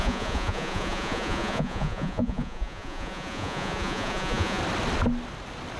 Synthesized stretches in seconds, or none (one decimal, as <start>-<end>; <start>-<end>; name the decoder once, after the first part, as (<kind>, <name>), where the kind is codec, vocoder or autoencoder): 0.0-4.6 (vocoder, Vocos)

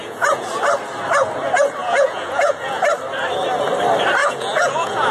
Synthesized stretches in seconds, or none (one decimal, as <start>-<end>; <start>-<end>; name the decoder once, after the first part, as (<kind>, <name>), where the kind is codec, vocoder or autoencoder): 0.0-0.5 (vocoder, Vocos); 1.8-2.8; 4.2-5.1

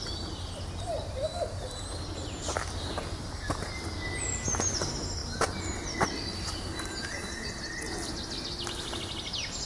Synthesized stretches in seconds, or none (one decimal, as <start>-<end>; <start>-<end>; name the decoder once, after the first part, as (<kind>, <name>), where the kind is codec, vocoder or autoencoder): none

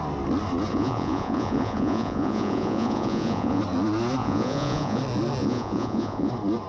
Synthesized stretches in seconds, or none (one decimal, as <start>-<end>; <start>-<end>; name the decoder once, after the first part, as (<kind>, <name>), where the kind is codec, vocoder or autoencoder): 0.7-3.6 (vocoder, Vocos); 4.2-5.0; 5.4-6.3

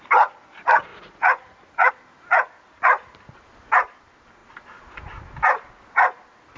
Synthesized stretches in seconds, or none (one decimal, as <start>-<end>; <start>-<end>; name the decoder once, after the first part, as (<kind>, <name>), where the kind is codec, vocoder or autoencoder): 0.9-1.9 (vocoder, Vocos)

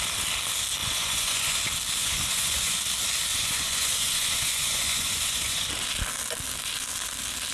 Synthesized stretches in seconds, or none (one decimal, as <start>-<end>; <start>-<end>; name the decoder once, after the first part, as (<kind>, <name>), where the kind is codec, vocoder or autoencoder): 0.8-1.6 (vocoder, Vocos); 2.0-2.8; 3.3-5.7

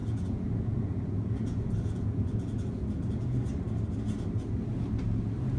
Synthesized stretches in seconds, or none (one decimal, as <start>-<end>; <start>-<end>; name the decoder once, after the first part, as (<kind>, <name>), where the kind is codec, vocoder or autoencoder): 0.0-3.4 (vocoder, Vocos)